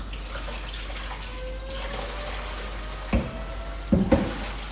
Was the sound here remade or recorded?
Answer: recorded